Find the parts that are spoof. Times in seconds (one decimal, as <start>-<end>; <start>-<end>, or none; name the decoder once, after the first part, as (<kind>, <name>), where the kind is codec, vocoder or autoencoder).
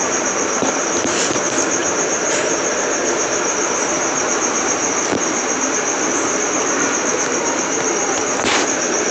0.0-9.1 (vocoder, BigVGAN v2)